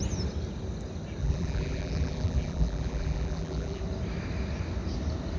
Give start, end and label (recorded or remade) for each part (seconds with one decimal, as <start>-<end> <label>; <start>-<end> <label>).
0.0-1.2 recorded; 1.2-3.8 remade; 3.8-5.4 recorded